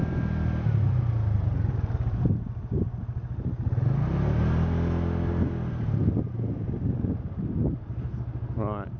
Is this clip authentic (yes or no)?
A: yes